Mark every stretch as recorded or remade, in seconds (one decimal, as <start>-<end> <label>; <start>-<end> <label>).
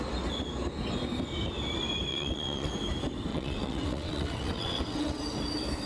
0.0-2.1 recorded; 2.1-2.7 remade; 2.7-3.3 recorded; 3.3-5.2 remade; 5.2-5.9 recorded